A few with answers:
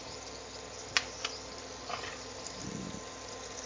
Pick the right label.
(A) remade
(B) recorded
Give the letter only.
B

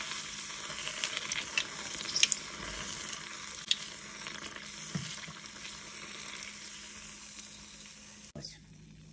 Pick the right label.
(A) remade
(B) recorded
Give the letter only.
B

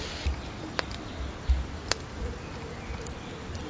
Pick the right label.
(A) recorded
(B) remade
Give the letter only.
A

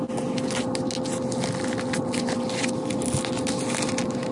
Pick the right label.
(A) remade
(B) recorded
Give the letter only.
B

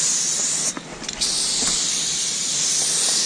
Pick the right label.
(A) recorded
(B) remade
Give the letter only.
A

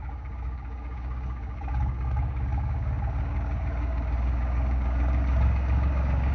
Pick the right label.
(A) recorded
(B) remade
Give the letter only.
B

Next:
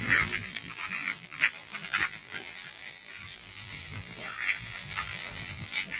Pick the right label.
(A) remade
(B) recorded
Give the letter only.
A